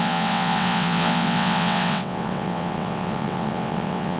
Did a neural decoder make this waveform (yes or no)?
yes